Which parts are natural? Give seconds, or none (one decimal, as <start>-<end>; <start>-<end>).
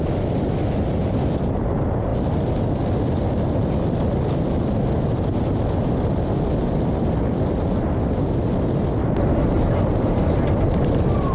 0.0-11.3